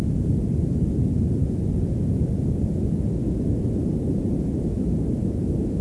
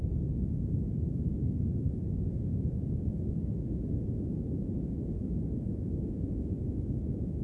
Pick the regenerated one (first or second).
second